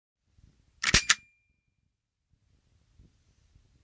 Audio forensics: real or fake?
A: real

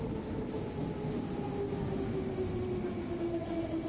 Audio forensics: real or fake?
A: real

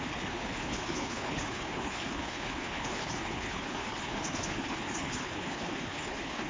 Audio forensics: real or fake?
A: fake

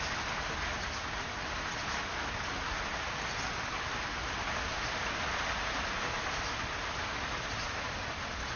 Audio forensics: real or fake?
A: real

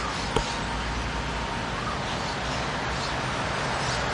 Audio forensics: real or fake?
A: real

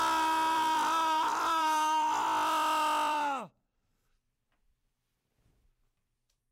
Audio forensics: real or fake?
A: fake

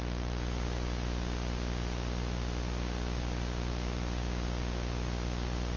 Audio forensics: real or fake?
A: real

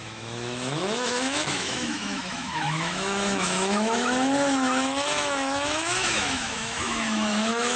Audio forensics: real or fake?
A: fake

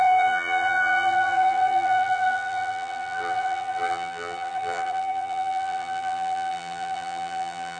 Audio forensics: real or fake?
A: fake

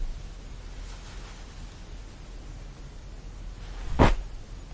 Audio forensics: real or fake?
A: real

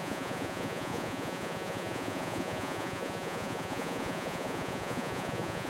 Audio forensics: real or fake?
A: fake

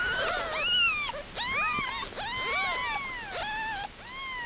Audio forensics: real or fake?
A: real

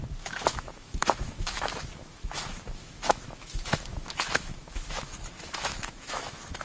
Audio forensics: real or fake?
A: fake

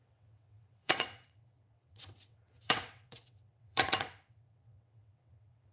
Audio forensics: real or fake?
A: fake